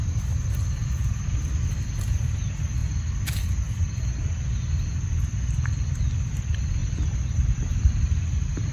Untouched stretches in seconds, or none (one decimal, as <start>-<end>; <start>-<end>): 0.0-6.8; 7.6-8.7